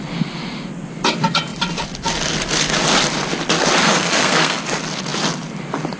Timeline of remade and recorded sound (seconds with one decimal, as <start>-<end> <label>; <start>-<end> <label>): 0.0-3.8 recorded; 3.8-4.6 remade; 4.6-6.0 recorded

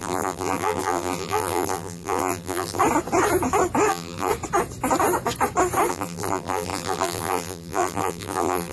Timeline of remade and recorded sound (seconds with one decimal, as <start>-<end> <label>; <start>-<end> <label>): 0.0-2.8 remade; 2.8-3.9 recorded; 3.9-4.3 remade; 4.3-5.9 recorded; 5.9-8.7 remade